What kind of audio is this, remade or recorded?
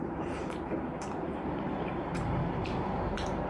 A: remade